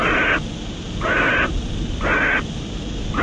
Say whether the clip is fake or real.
real